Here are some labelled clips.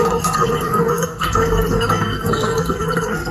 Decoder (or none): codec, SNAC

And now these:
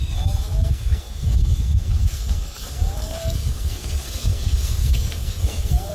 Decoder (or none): codec, SNAC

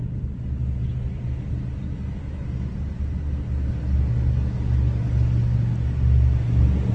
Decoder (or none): none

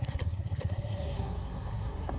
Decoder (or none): codec, SNAC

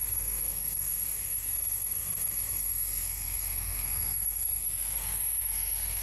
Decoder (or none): codec, SNAC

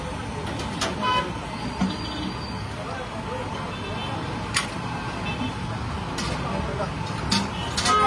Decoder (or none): none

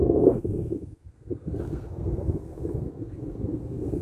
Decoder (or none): codec, SNAC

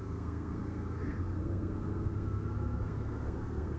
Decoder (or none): codec, SNAC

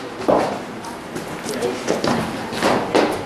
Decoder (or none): none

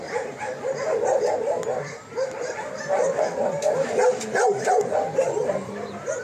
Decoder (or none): none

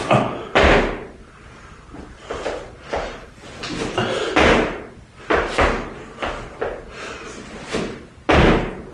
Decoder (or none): none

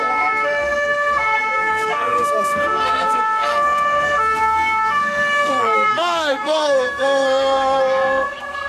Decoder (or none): codec, SNAC